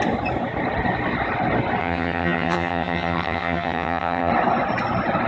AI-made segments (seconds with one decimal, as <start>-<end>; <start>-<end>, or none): 1.8-4.3